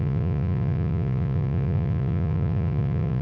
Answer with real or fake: fake